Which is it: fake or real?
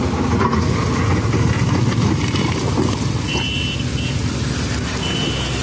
real